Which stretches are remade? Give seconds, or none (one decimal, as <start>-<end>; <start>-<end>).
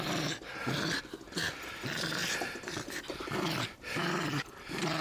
2.2-3.9